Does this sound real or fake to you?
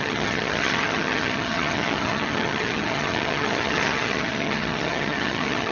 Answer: fake